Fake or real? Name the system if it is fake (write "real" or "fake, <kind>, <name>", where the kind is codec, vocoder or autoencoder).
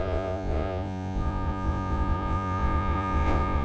fake, vocoder, Vocos